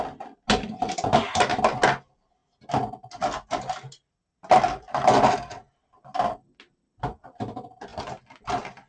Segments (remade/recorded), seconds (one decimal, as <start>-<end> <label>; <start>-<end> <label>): 0.0-8.9 recorded